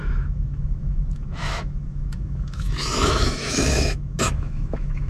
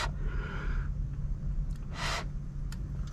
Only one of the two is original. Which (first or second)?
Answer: second